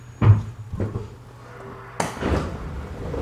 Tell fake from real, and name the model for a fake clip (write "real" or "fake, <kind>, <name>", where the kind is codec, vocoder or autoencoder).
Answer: real